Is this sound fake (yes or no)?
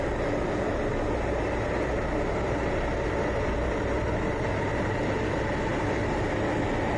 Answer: no